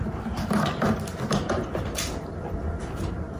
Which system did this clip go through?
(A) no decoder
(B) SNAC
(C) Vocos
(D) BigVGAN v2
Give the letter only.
D